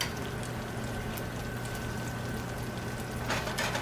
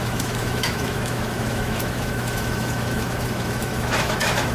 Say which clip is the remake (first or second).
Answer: second